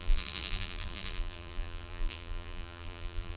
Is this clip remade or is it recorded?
remade